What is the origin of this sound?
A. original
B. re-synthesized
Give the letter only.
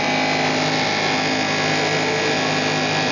A